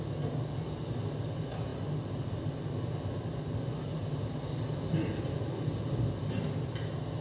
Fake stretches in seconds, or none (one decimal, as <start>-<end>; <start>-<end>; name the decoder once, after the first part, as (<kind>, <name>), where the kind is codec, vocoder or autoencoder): none